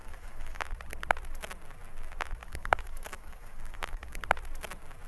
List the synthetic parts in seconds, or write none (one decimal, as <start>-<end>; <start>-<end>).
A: 0.0-0.6; 2.4-4.2